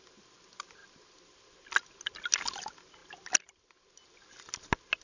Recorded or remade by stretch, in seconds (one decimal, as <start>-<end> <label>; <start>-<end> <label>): 0.0-5.0 recorded